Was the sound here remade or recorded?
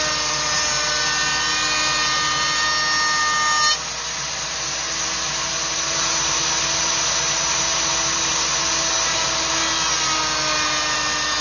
recorded